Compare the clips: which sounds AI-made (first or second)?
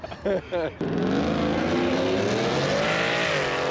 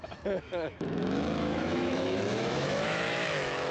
second